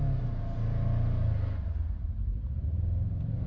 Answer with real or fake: real